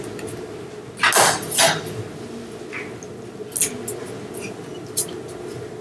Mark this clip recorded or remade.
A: recorded